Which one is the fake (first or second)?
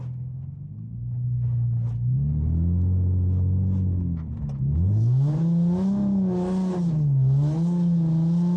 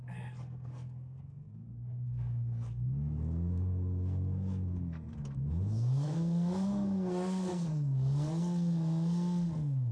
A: second